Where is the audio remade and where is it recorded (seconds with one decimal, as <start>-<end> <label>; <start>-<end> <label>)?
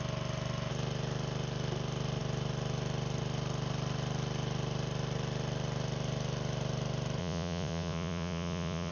0.0-7.2 recorded; 7.2-8.9 remade